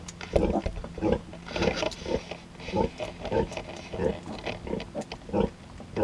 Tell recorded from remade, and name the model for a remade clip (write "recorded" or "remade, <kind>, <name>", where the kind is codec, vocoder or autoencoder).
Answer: recorded